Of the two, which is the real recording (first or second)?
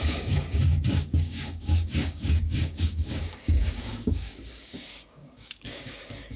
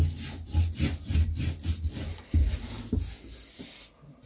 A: second